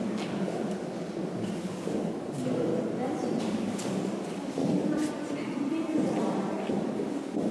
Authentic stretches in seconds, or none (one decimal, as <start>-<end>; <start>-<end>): 2.7-3.4; 4.6-6.7